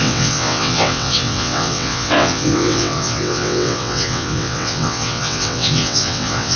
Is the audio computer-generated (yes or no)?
yes